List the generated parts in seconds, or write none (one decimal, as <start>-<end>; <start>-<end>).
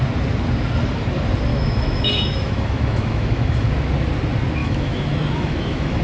1.5-3.7; 4.6-6.0